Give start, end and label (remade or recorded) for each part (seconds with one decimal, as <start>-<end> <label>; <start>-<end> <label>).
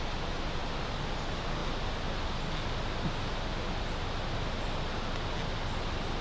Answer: 0.0-6.2 recorded